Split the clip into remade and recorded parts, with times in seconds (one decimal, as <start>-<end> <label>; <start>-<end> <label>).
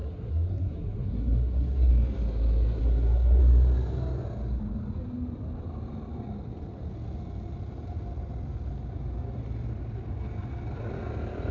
0.0-1.9 remade; 1.9-2.8 recorded; 2.8-3.4 remade; 3.4-11.5 recorded